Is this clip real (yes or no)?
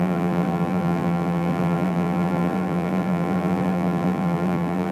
no